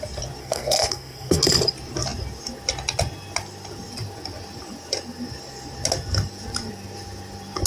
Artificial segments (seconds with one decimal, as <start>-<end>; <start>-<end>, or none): 0.4-1.4